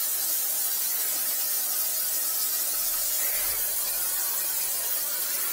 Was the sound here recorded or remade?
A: recorded